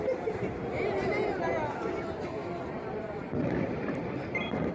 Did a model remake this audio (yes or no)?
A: no